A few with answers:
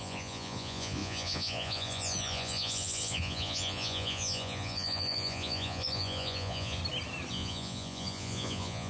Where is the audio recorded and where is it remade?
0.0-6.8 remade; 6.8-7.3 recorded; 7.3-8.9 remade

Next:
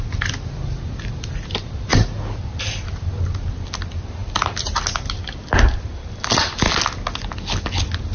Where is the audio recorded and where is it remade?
0.0-8.1 recorded

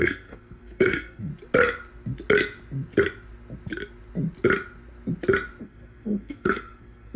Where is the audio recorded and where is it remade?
0.0-1.3 remade; 1.3-5.6 recorded; 5.6-7.2 remade